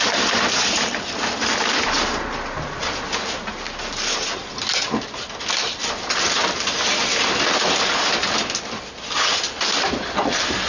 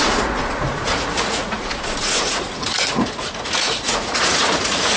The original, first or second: first